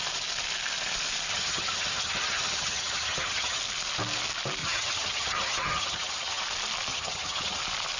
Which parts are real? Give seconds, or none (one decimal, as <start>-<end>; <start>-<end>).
0.0-1.3; 3.6-4.6; 6.4-6.9; 7.6-8.0